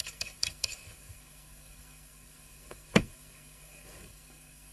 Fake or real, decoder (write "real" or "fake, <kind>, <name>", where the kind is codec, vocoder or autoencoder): fake, codec, SNAC